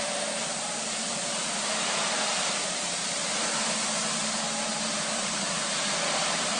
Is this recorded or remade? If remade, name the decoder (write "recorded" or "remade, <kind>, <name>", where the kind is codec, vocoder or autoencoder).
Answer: remade, vocoder, BigVGAN v2